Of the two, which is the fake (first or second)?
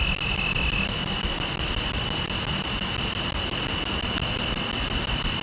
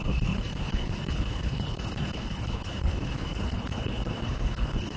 second